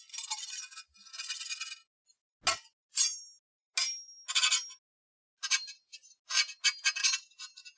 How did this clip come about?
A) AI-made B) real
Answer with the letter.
B